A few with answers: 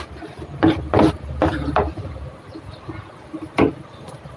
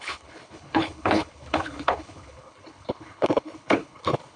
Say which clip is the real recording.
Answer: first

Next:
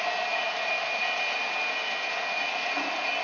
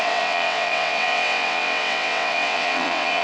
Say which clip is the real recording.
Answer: first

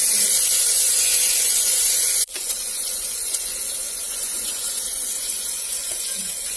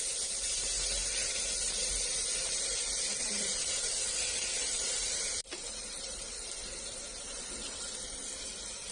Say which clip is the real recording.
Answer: second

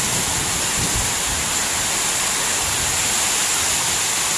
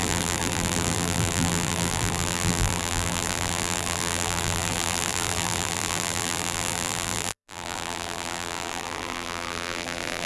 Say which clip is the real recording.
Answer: first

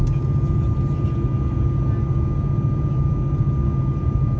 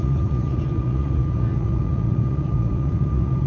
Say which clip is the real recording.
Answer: first